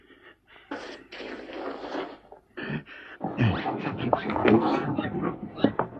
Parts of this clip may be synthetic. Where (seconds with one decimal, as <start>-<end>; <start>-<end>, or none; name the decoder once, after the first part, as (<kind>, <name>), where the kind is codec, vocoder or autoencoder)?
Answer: 3.6-6.0 (codec, SNAC)